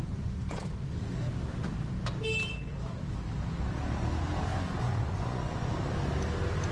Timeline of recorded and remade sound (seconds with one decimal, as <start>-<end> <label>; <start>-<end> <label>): 0.0-0.6 remade; 0.6-4.5 recorded; 4.5-5.7 remade; 5.7-6.7 recorded

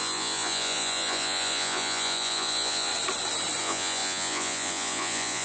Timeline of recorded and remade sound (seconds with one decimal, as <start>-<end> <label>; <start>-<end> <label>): 0.0-2.9 remade; 2.9-3.6 recorded; 3.6-5.4 remade

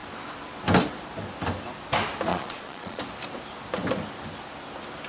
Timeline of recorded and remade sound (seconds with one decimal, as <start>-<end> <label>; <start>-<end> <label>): 0.0-2.3 recorded; 2.3-3.0 remade; 3.0-5.1 recorded

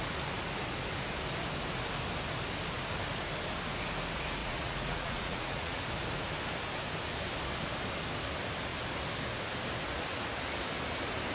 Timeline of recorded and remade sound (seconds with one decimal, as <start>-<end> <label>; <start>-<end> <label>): 0.0-4.4 recorded; 4.4-5.8 remade; 5.8-11.3 recorded

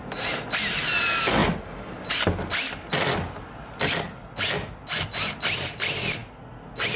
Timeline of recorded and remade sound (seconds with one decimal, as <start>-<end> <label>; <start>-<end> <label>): 0.0-7.0 recorded

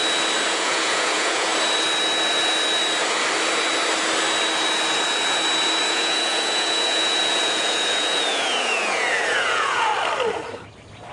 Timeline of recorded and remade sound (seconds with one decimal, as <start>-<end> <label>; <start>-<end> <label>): 0.0-0.5 recorded; 0.5-1.5 remade; 1.5-5.9 recorded; 5.9-9.9 remade; 9.9-11.1 recorded